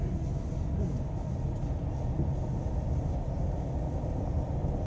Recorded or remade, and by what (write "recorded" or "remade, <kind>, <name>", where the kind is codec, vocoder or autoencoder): recorded